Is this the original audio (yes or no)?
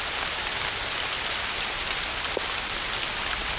yes